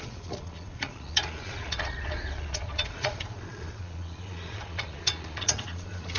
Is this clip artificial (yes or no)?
yes